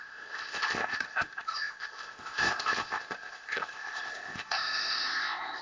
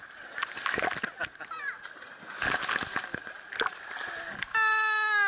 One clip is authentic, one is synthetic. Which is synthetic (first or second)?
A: first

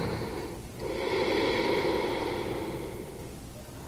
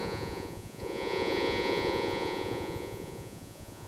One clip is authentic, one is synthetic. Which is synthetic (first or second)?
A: second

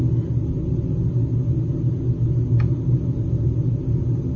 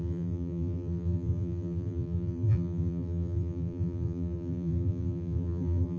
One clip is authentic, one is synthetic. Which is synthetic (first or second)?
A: second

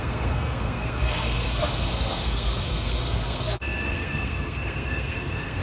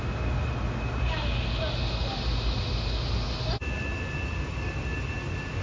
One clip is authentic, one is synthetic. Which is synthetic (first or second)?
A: first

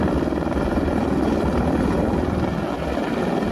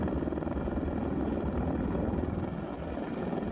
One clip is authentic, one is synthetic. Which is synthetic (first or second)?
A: second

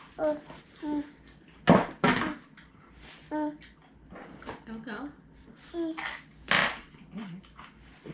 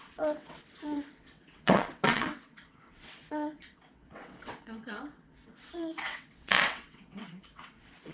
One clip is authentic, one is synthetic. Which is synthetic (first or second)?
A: second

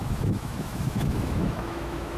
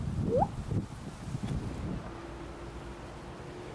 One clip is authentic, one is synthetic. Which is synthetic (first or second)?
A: first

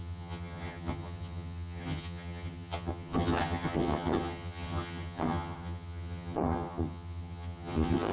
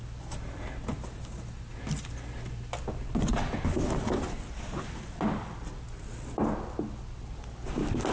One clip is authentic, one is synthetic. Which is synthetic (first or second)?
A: first